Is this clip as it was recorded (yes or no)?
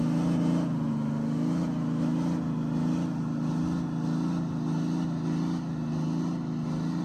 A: yes